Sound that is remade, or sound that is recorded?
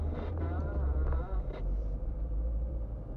remade